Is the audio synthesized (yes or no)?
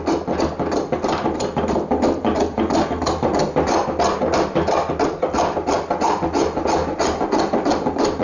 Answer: no